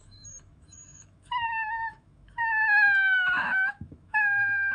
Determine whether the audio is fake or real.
fake